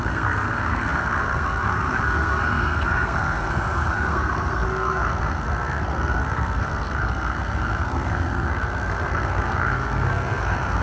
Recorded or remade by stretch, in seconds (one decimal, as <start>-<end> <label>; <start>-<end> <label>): 0.0-10.8 remade